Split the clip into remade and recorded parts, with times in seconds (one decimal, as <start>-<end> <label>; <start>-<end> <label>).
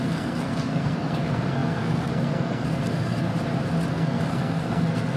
0.0-3.3 remade; 3.3-3.9 recorded; 3.9-5.2 remade